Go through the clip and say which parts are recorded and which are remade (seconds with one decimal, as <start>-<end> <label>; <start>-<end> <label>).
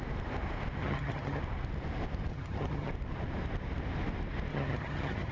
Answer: 0.0-0.8 recorded; 0.8-1.4 remade; 1.4-2.3 recorded; 2.3-2.9 remade; 2.9-4.5 recorded; 4.5-5.3 remade